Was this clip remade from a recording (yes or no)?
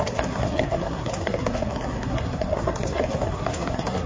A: yes